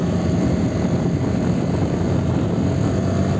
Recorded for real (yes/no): yes